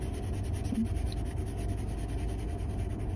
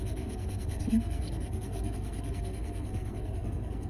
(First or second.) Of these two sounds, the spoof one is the second